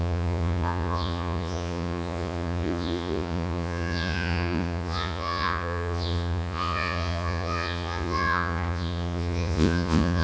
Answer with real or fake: fake